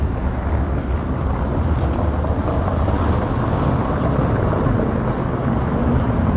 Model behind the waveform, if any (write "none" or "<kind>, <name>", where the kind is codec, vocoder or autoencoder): none